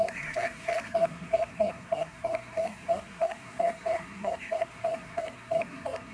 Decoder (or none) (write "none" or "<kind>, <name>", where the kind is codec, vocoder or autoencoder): codec, SNAC